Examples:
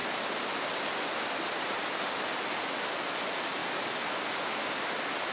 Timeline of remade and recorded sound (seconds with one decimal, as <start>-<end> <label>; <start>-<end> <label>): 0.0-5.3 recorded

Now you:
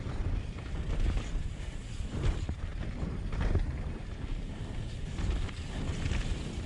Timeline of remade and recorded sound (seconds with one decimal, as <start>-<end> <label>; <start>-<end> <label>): 0.0-6.7 recorded

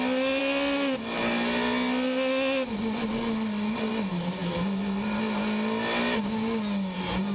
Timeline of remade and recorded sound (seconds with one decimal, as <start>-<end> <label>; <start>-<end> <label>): 0.0-7.3 recorded

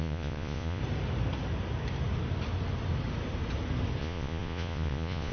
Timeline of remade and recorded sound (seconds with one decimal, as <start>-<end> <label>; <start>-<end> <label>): 0.0-0.8 remade; 0.8-4.0 recorded; 4.0-5.3 remade

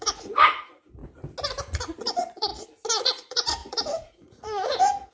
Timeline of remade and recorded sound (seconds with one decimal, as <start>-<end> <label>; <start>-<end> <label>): 0.0-1.0 remade; 1.0-1.6 recorded; 1.6-2.5 remade; 2.5-3.0 recorded; 3.0-5.1 remade

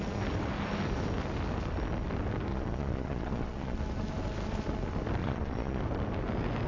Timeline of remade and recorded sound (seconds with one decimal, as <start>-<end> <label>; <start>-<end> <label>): 0.0-2.5 recorded; 2.5-3.8 remade; 3.8-5.2 recorded; 5.2-5.8 remade; 5.8-6.7 recorded

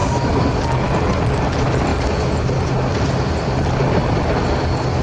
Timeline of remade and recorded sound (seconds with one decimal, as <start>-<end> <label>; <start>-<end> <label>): 0.0-5.0 recorded